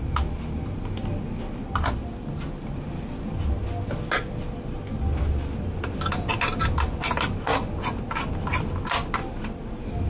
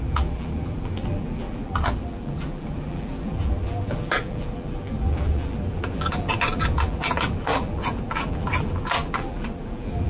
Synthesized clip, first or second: second